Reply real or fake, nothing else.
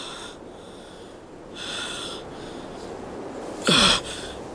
real